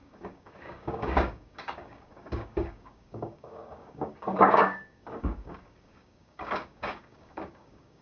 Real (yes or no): no